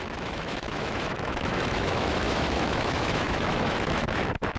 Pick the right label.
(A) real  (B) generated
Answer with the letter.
B